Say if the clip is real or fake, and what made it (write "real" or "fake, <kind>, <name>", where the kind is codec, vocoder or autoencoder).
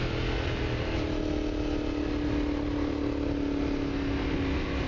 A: real